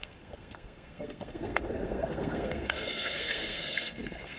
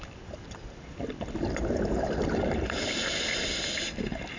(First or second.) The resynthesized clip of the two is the first